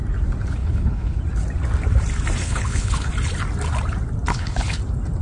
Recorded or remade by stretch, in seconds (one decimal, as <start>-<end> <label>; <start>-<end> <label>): 0.0-0.6 recorded; 0.6-1.2 remade; 1.2-2.4 recorded; 2.4-3.1 remade; 3.1-4.3 recorded; 4.3-4.8 remade; 4.8-5.2 recorded